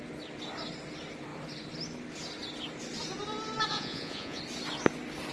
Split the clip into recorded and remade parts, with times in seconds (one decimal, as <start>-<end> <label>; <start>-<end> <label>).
0.0-3.7 recorded; 3.7-4.4 remade; 4.4-5.3 recorded